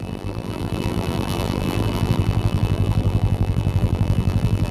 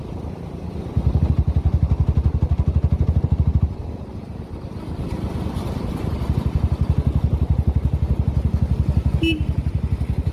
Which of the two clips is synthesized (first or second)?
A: first